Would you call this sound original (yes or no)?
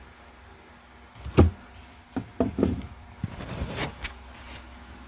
yes